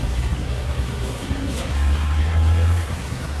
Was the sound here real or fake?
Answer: fake